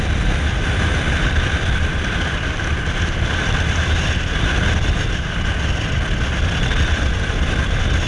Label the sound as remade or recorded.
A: recorded